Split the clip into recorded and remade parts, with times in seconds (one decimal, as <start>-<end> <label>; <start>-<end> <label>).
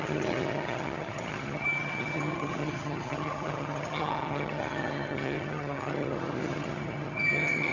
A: 0.0-7.7 remade